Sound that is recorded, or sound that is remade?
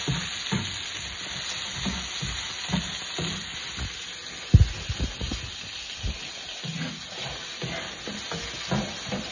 recorded